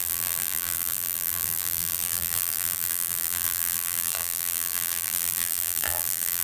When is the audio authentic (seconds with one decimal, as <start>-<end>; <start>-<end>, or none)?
none